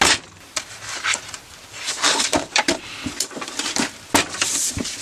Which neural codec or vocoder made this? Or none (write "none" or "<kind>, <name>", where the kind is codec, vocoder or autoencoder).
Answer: none